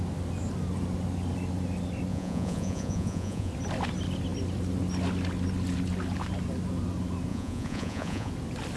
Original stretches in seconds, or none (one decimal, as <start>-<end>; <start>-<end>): 0.0-2.1; 3.5-7.3; 8.3-8.8